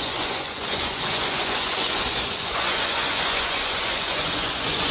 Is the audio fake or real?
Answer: fake